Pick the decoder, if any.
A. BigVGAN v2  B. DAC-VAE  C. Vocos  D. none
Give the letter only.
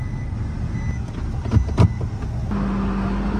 D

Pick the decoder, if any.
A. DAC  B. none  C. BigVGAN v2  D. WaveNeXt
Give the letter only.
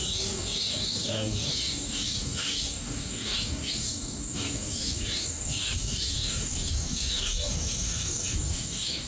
A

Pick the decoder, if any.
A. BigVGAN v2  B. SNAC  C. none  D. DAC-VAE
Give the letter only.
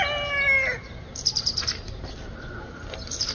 C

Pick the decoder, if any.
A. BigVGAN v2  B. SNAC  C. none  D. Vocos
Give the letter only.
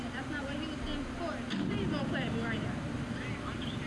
C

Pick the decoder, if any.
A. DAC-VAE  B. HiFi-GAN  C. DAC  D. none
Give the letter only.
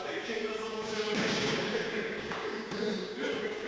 C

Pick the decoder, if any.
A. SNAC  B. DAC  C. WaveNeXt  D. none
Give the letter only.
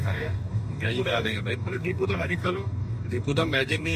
B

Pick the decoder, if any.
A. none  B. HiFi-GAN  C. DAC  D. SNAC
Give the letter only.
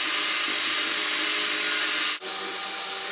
A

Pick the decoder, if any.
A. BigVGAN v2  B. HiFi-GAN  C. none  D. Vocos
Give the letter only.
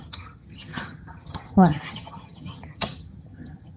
B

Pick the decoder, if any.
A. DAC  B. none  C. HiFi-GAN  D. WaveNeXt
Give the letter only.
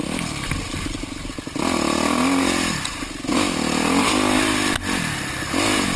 B